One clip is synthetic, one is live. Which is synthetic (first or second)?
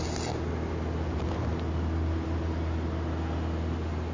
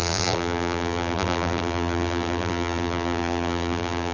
second